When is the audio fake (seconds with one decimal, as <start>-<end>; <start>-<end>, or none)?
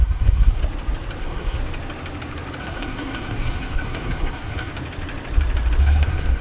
0.0-0.6; 1.2-1.6; 2.6-4.7; 5.8-6.4